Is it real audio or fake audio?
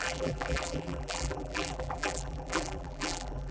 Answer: fake